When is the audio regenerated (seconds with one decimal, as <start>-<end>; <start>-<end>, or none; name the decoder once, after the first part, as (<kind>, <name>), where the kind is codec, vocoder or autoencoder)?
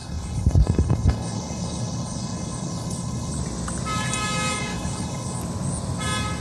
0.0-3.4 (codec, HILCodec); 4.7-5.4